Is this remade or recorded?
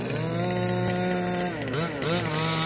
recorded